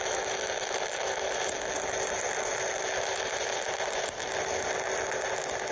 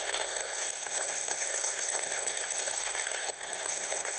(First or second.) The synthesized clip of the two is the second